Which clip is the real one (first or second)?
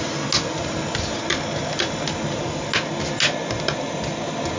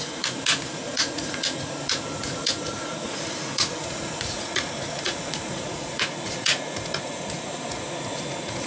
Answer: first